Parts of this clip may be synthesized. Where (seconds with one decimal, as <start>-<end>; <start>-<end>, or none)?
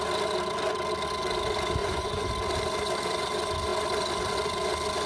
1.8-2.3